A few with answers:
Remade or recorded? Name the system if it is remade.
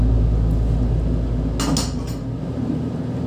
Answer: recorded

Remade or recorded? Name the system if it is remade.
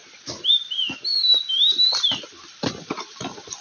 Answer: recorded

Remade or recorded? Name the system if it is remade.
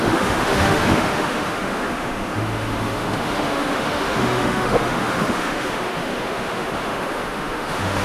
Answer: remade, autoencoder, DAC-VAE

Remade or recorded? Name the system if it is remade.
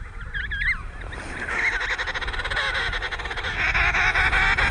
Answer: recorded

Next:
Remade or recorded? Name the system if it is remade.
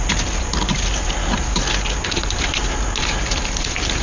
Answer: recorded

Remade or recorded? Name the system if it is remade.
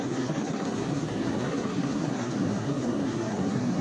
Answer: remade, codec, SNAC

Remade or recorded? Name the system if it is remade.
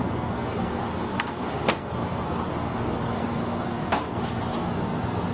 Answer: remade, codec, SNAC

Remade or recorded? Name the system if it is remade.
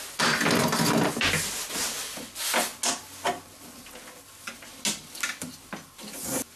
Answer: recorded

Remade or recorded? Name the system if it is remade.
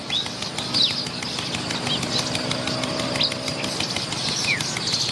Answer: recorded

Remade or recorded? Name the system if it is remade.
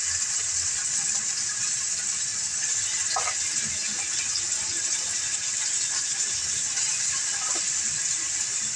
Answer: recorded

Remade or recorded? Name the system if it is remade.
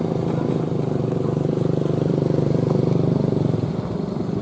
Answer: recorded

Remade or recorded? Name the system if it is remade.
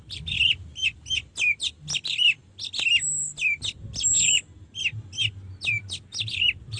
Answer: recorded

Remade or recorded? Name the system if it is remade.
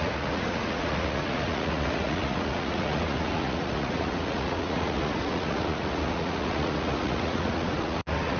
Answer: remade, vocoder, Vocos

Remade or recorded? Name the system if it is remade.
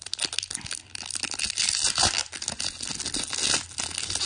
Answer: recorded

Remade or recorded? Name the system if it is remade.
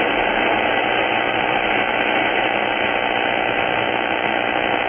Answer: recorded